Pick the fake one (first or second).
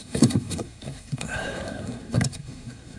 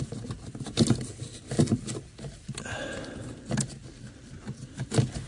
first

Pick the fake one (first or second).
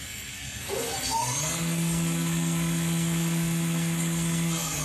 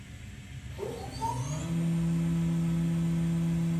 first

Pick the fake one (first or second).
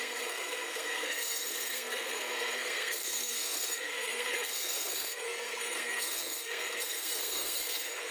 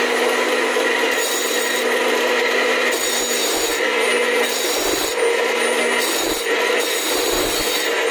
first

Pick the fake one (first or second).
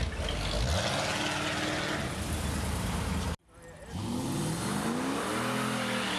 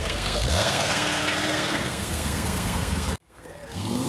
second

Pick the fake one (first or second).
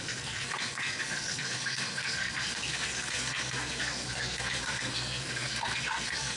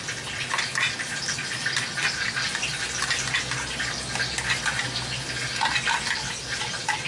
first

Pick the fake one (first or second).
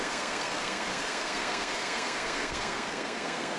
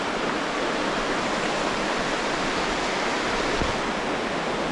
first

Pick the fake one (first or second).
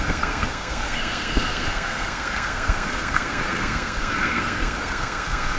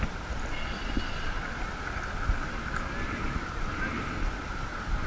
first